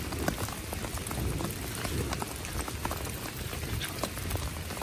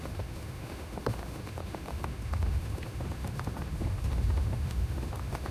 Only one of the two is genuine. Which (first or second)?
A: first